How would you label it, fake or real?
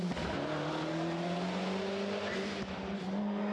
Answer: real